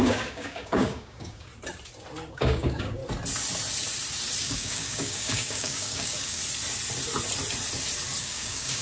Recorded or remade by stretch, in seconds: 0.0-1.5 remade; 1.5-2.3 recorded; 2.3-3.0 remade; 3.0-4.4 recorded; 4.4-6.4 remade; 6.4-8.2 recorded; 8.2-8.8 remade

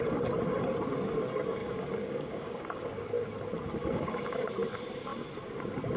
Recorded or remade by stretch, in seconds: 0.0-1.6 recorded; 1.6-3.1 remade; 3.1-3.8 recorded; 3.8-4.5 remade; 4.5-6.0 recorded

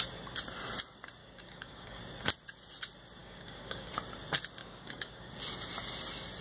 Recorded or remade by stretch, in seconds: 0.0-1.2 recorded; 1.2-2.0 remade; 2.0-3.2 recorded; 3.2-3.9 remade; 3.9-4.6 recorded; 4.6-5.3 remade; 5.3-6.4 recorded

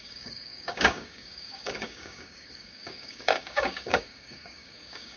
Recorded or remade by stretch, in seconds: 0.0-5.2 remade

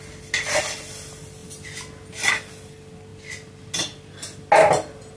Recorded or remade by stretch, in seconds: 0.0-5.2 recorded

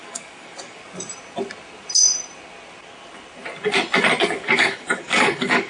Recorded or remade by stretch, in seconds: 0.0-0.8 remade; 0.8-4.2 recorded; 4.2-5.7 remade